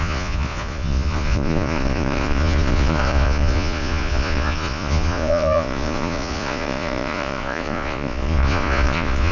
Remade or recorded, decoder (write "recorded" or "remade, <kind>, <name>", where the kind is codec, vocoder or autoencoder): remade, vocoder, Vocos